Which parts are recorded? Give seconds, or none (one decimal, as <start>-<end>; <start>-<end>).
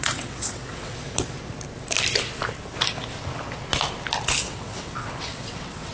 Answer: 0.9-4.4